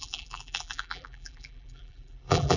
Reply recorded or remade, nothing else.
remade